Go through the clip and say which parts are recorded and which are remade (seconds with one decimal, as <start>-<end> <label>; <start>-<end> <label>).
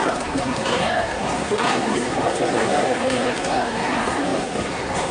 0.0-5.1 remade